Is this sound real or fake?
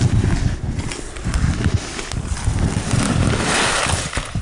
real